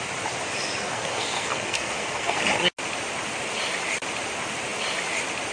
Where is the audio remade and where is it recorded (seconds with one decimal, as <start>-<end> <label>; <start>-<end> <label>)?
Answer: 0.0-0.8 recorded; 0.8-2.4 remade; 2.4-5.5 recorded